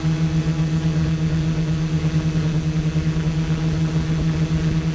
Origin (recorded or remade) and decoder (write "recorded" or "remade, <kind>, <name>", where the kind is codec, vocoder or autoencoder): recorded